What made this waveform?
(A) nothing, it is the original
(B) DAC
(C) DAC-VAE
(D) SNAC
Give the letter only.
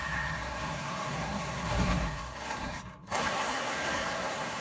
D